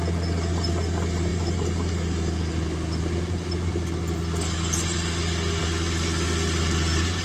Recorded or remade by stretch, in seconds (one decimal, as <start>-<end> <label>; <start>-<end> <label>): 0.0-7.2 recorded